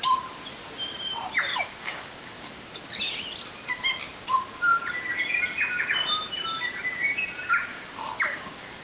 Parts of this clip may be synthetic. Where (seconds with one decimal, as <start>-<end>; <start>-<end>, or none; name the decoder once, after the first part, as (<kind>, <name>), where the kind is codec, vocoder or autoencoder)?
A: 1.5-2.5 (codec, DAC); 7.7-8.8